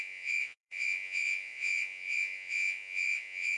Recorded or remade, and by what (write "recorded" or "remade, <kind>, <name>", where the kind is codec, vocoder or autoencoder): remade, vocoder, Vocos